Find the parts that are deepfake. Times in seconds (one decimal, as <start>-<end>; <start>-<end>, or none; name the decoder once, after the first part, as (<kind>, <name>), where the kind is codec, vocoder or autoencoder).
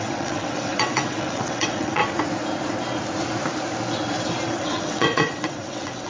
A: 0.0-2.0 (vocoder, WaveNeXt); 4.6-6.1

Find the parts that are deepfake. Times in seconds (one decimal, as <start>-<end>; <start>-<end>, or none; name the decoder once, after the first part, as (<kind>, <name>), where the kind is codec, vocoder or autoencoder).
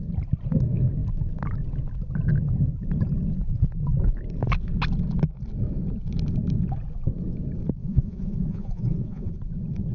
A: 7.8-9.3 (vocoder, Vocos)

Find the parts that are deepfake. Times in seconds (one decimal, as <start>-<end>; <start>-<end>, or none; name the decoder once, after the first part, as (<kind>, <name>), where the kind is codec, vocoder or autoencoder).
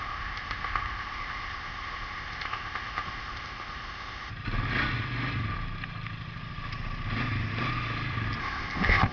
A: 0.0-4.3 (codec, ZipCodec); 8.4-9.1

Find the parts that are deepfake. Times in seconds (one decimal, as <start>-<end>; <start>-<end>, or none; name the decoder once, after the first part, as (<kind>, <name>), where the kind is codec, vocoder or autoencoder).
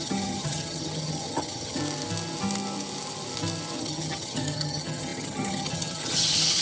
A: 0.0-1.8 (vocoder, HiFi-GAN); 3.8-6.6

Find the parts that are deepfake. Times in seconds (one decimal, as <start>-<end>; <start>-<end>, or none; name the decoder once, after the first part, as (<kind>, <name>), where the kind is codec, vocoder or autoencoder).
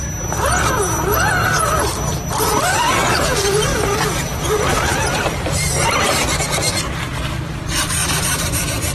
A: 3.7-6.4 (vocoder, BigVGAN v2); 8.0-8.9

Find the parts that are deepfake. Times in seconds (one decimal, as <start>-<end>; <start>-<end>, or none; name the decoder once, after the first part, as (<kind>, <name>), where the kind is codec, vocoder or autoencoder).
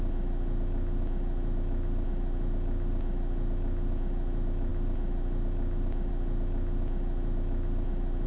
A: none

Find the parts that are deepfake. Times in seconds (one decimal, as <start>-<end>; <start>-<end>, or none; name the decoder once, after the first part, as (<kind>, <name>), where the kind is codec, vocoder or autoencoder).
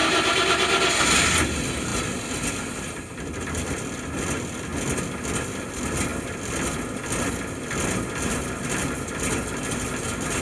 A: none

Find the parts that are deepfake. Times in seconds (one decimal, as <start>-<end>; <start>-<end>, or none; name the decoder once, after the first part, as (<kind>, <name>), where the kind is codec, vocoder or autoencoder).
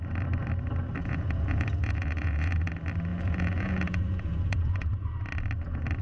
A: 1.0-2.7 (vocoder, Vocos); 3.1-5.1